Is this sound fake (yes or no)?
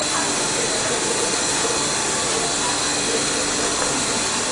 no